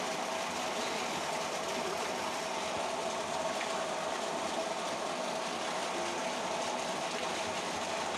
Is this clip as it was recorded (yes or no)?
yes